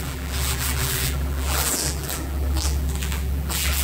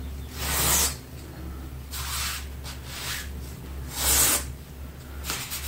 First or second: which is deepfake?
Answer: first